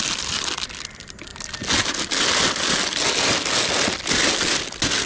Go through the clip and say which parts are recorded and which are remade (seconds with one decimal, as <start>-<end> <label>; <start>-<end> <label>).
0.0-5.1 recorded